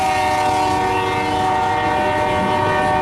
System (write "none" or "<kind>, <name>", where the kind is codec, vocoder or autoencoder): none